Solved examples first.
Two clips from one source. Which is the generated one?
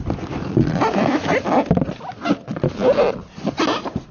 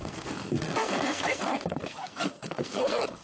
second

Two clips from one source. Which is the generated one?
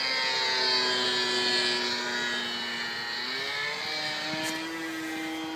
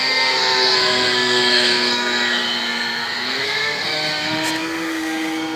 second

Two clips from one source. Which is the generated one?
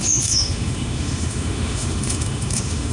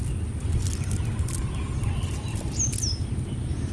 first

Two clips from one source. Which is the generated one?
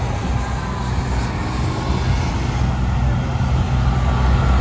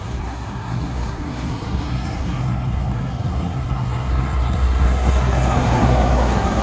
second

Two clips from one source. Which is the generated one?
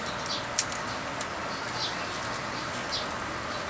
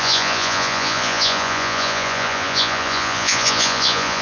second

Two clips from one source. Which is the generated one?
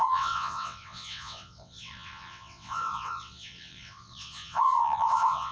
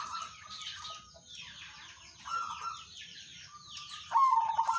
first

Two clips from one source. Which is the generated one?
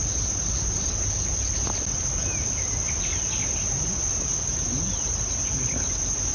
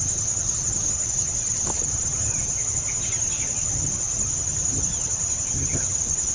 second